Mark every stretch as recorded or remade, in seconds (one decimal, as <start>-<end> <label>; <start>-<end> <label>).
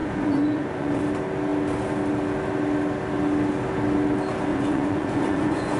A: 0.0-1.0 remade; 1.0-4.5 recorded; 4.5-5.8 remade